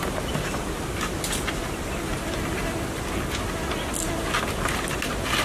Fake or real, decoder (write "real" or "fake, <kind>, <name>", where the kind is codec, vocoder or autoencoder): real